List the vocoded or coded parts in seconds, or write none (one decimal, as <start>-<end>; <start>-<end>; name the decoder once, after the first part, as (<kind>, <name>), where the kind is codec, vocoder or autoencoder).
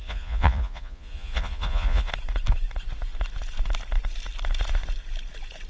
0.0-2.1 (vocoder, Vocos)